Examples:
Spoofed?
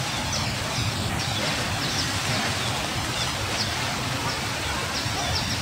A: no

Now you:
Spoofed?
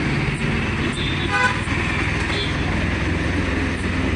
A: no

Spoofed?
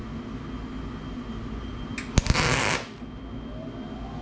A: no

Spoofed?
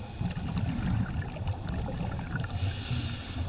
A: no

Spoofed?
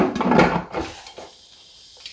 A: no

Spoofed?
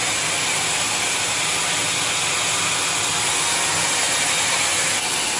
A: no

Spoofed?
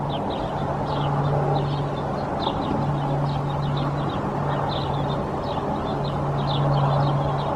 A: no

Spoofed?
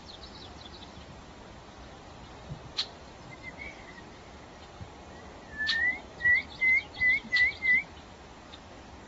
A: yes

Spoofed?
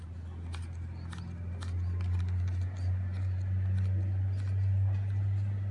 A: no